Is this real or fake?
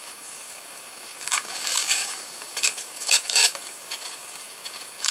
fake